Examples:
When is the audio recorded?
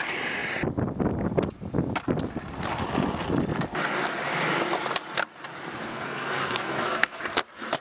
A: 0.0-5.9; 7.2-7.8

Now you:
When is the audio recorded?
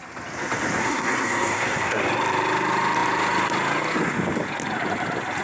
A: 0.0-0.8; 2.0-5.4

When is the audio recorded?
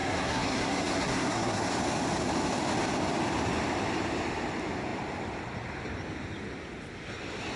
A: 1.6-7.6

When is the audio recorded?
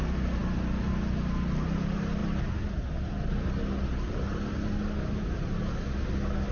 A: 0.0-6.5